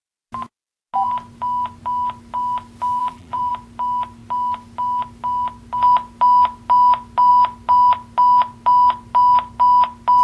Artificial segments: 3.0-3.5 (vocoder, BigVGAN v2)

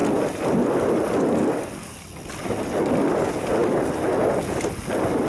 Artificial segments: none

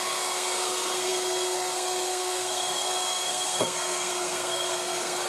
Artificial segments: 0.0-5.3 (codec, SNAC)